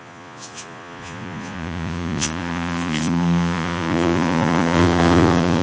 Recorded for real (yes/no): no